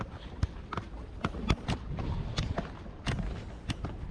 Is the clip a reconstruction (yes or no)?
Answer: no